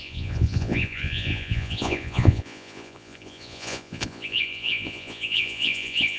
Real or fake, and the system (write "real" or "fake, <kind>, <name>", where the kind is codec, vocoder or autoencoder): fake, vocoder, Vocos